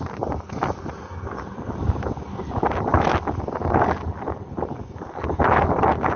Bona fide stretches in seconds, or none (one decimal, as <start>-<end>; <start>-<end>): 0.0-6.2